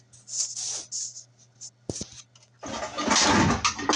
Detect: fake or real real